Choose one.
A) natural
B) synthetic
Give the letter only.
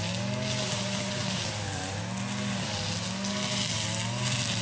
A